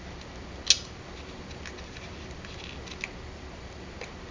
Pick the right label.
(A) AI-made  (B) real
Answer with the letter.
B